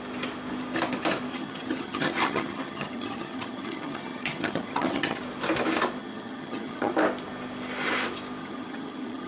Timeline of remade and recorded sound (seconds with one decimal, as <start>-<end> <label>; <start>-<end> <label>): 0.0-1.3 recorded; 1.3-5.2 remade; 5.2-6.0 recorded; 6.0-6.9 remade; 6.9-8.4 recorded; 8.4-9.3 remade

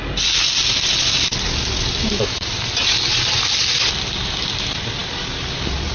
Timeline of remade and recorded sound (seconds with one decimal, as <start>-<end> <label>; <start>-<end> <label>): 0.0-5.9 recorded

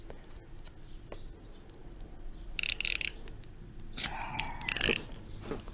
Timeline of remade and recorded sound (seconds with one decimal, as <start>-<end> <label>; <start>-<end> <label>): 0.0-5.7 recorded

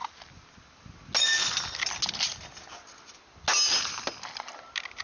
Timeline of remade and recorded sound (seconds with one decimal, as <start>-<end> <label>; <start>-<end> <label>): 0.0-5.0 recorded

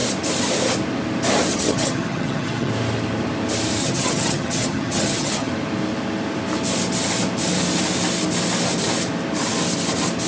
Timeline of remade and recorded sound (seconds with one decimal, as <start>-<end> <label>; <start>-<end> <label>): 0.0-1.5 recorded; 1.5-2.7 remade; 2.7-3.8 recorded; 3.8-5.5 remade; 5.5-10.3 recorded

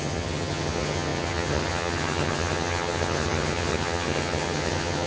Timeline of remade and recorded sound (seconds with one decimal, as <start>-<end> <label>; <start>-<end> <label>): 0.0-5.1 remade